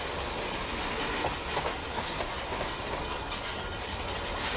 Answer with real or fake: real